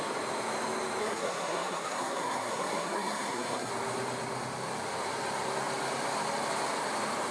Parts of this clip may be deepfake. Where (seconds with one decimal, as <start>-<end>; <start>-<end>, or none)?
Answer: 1.0-3.7